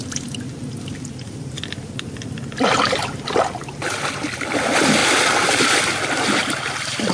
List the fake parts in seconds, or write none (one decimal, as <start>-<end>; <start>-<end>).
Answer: none